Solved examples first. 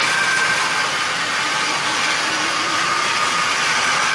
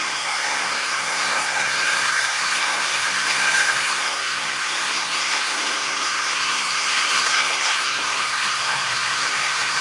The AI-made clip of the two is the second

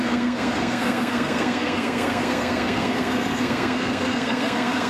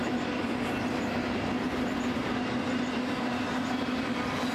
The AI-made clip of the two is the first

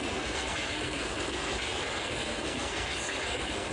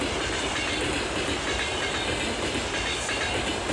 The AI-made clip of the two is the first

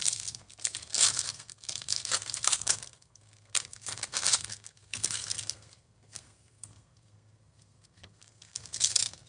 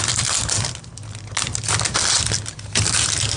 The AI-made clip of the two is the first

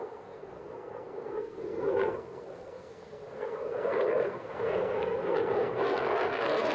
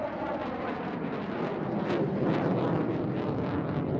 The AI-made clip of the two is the first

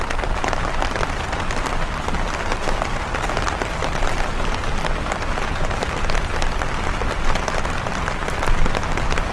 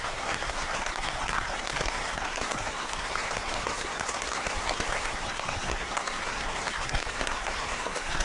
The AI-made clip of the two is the second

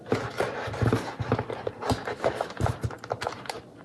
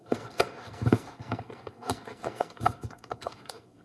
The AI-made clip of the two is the second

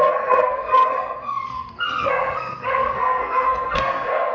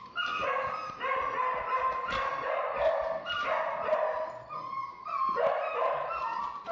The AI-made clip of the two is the first